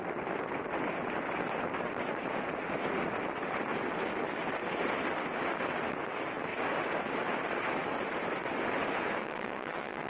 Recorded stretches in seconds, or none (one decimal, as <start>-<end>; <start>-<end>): 0.0-9.2